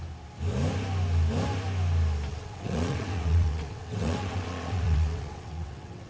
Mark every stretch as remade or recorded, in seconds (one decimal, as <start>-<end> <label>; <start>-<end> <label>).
0.0-2.3 recorded; 2.3-6.1 remade